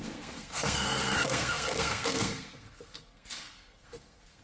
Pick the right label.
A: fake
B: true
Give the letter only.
A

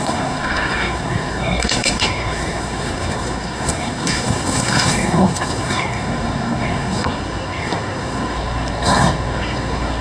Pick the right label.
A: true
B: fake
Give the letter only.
B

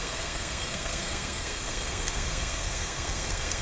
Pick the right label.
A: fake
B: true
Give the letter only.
A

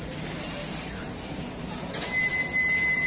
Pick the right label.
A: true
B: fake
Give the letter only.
A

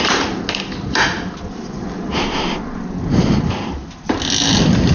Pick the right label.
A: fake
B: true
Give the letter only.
B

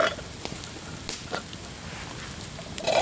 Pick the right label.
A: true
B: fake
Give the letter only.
A